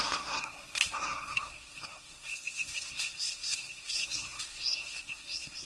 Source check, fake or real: fake